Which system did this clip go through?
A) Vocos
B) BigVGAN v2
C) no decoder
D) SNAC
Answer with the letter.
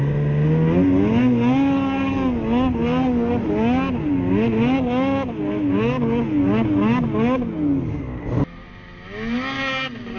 C